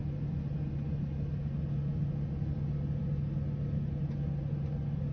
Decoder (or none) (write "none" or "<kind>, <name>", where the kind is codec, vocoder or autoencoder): none